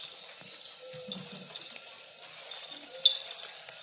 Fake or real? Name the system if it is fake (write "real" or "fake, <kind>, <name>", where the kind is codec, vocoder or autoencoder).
real